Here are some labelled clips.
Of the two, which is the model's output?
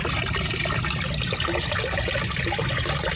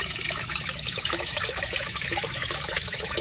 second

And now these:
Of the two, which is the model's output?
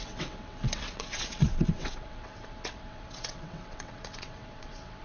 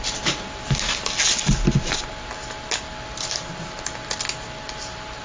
first